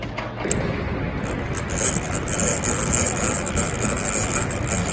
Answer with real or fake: real